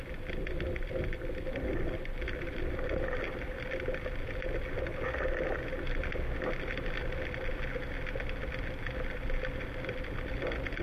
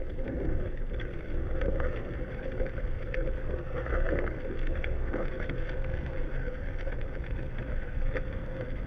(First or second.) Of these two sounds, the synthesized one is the second